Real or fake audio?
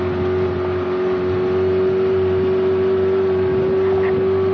real